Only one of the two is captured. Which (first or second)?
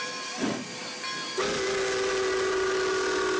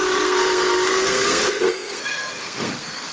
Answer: first